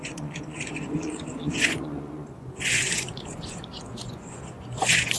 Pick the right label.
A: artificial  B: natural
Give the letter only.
A